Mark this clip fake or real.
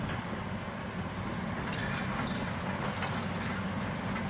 real